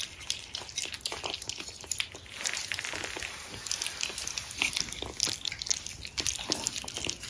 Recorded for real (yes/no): yes